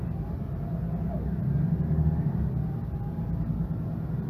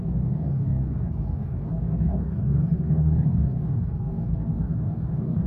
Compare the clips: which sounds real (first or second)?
first